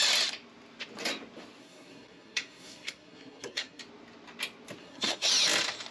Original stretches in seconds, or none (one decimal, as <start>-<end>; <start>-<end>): 0.0-1.6; 3.8-4.8; 5.3-5.9